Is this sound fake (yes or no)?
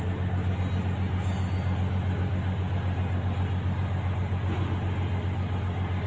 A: no